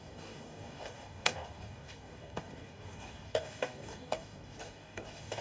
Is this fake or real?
fake